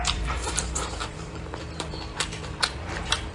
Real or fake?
fake